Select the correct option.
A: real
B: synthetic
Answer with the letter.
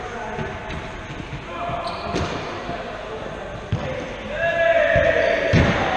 A